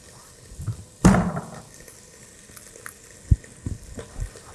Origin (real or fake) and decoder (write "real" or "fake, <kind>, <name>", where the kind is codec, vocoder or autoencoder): real